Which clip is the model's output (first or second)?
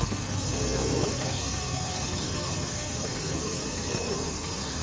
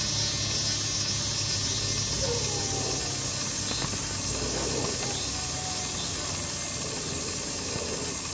first